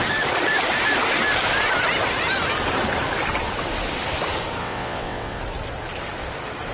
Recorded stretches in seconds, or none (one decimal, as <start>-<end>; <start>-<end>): 0.0-4.6; 5.4-6.7